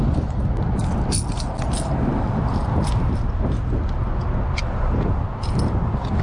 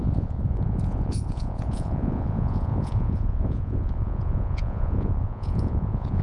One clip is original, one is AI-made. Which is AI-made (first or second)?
second